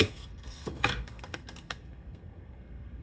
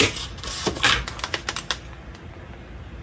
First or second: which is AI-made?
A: first